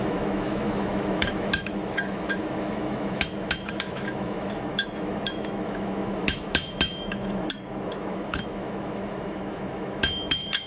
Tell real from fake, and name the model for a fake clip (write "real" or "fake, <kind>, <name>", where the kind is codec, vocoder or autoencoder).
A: fake, autoencoder, DAC-VAE